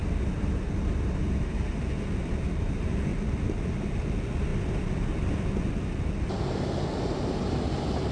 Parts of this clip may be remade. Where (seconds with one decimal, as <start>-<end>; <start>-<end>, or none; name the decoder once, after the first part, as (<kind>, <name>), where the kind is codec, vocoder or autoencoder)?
none